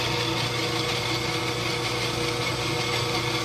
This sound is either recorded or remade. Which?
recorded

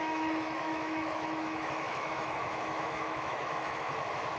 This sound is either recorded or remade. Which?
remade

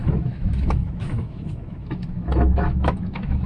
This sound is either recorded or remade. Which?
remade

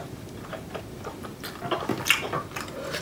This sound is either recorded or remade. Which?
recorded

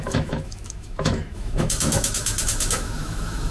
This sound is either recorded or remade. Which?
remade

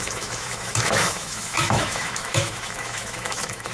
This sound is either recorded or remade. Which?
remade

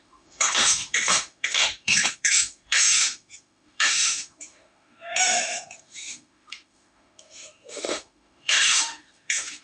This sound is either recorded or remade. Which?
remade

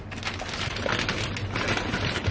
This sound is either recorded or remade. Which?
recorded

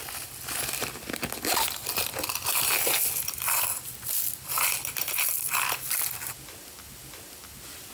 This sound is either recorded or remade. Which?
recorded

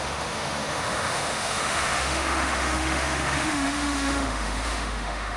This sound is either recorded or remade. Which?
remade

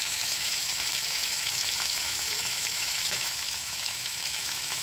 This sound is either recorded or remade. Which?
remade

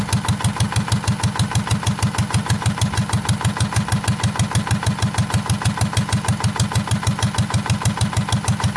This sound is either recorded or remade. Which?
recorded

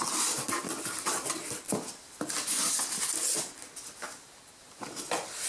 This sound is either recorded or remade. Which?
recorded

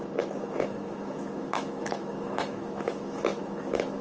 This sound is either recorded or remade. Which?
remade